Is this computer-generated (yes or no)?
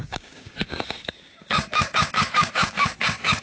yes